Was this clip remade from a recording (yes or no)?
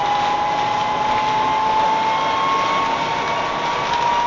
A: no